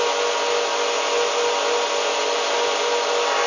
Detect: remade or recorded recorded